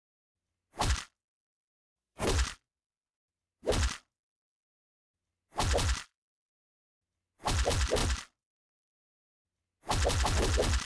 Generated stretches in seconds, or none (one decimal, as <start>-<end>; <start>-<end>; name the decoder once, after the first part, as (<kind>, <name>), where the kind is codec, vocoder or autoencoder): 1.9-2.9 (vocoder, BigVGAN v2)